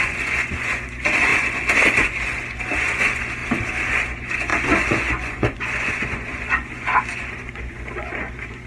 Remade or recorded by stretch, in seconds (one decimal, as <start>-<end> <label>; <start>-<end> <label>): 0.0-3.4 remade; 3.4-3.9 recorded; 3.9-8.7 remade